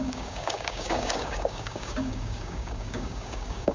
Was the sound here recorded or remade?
remade